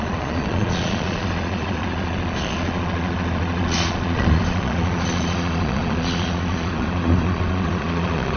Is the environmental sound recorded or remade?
remade